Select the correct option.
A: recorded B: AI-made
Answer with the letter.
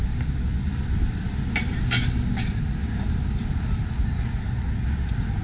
A